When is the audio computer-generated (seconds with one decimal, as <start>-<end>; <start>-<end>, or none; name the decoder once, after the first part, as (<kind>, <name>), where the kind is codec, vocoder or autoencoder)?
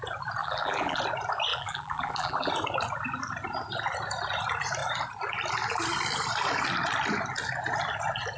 0.4-1.0 (vocoder, BigVGAN v2); 1.5-2.5